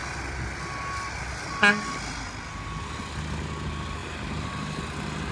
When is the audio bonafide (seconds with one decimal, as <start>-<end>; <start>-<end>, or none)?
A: 0.0-5.3